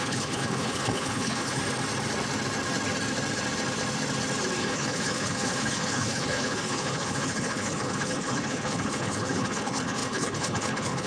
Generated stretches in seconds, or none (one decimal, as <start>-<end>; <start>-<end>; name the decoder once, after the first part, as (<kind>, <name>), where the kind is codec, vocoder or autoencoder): 0.0-1.6 (codec, HILCodec); 4.6-11.1